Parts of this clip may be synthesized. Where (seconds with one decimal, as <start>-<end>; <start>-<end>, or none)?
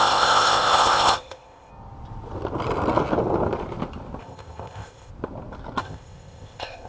0.0-1.7; 4.2-5.1; 5.8-6.9